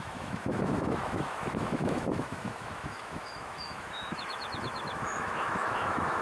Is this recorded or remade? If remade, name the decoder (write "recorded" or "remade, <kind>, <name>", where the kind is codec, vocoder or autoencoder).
remade, autoencoder, DAC-VAE